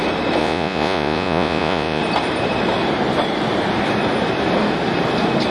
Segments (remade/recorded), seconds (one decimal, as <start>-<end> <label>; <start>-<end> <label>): 0.0-0.4 recorded; 0.4-2.0 remade; 2.0-5.5 recorded